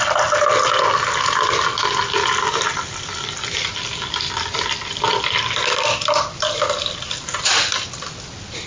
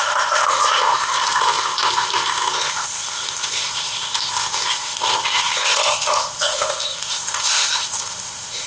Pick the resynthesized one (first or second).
second